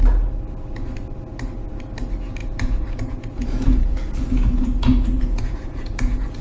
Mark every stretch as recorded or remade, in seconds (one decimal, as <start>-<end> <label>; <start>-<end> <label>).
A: 0.0-2.4 recorded; 2.4-6.4 remade